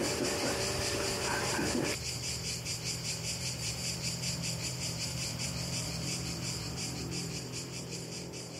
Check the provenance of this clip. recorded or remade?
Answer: remade